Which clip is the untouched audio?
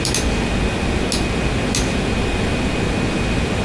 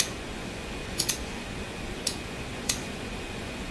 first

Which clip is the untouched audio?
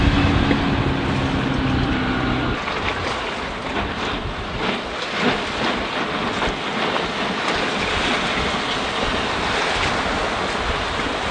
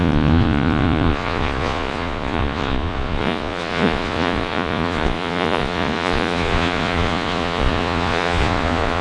first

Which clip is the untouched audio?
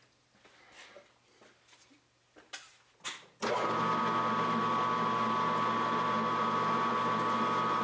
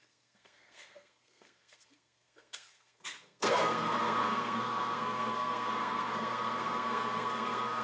first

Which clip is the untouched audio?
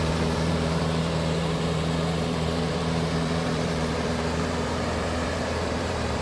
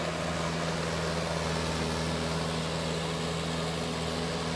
second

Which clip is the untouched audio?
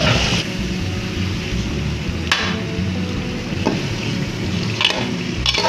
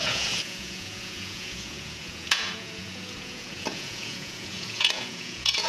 first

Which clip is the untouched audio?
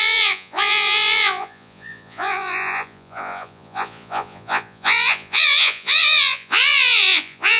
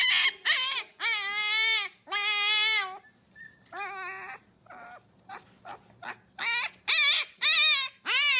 second